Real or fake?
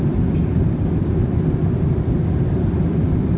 real